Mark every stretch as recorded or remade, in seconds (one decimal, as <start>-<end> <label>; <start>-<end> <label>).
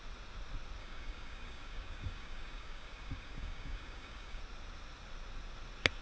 0.0-0.8 recorded; 0.8-4.4 remade; 4.4-6.0 recorded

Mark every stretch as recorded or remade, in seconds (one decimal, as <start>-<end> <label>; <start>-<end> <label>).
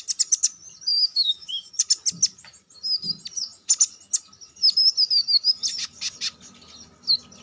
0.0-0.9 recorded; 0.9-1.7 remade; 1.7-7.4 recorded